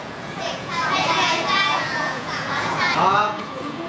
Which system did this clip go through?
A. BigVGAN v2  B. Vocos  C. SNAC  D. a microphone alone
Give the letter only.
B